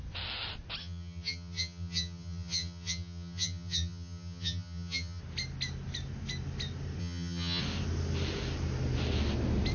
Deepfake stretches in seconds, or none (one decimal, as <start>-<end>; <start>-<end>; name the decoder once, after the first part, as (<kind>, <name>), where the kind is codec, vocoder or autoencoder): 0.8-5.2 (vocoder, HiFi-GAN); 7.0-7.6